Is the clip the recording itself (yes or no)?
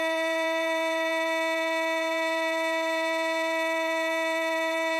no